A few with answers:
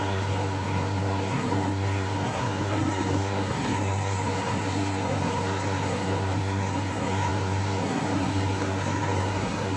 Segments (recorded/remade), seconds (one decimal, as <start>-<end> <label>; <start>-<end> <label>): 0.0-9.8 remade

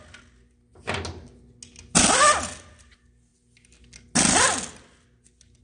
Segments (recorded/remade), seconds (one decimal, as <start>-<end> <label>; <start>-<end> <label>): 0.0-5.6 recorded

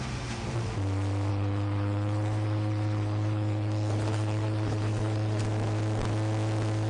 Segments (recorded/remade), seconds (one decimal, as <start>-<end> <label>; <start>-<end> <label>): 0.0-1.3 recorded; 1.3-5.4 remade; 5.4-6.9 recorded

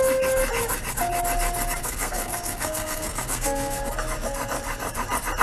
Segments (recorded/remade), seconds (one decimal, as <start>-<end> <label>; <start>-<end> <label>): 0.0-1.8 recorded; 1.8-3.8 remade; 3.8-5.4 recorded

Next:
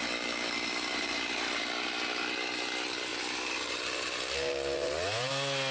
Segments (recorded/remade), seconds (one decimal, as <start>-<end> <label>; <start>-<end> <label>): 0.0-0.9 recorded; 0.9-1.6 remade; 1.6-3.1 recorded; 3.1-5.3 remade; 5.3-5.7 recorded

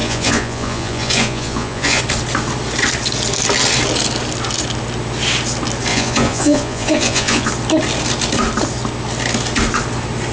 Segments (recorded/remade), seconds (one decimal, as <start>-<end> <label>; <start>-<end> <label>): 0.0-2.0 remade; 2.0-5.9 recorded; 5.9-7.5 remade; 7.5-10.3 recorded

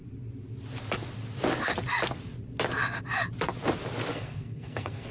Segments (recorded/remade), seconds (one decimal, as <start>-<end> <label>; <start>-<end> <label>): 0.0-4.1 recorded; 4.1-5.1 remade